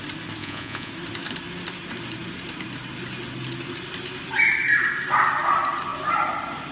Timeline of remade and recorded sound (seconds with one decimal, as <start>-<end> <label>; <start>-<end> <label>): 0.0-0.4 recorded; 0.4-0.9 remade; 0.9-6.7 recorded

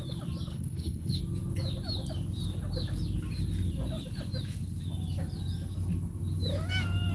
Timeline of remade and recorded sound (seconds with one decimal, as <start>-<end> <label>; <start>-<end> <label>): 0.0-0.5 recorded; 0.5-1.2 remade; 1.2-7.1 recorded

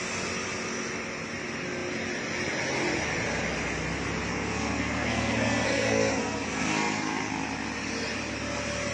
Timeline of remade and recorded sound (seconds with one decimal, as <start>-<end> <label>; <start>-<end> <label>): 0.0-4.3 recorded; 4.3-7.3 remade; 7.3-8.9 recorded